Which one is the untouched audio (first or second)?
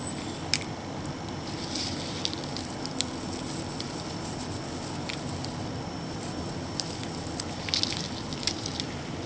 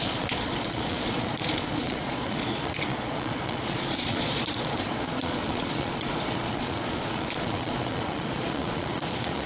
first